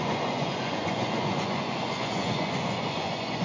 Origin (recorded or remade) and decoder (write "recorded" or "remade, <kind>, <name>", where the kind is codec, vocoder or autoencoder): remade, vocoder, Vocos